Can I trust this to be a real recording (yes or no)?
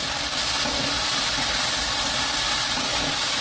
yes